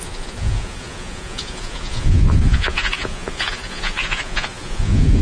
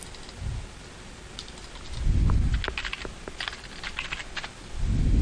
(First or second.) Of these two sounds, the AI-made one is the first